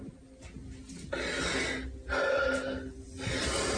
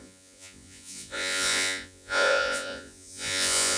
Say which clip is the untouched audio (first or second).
first